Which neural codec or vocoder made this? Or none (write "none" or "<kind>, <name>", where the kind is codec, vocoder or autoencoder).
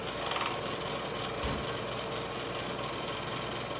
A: none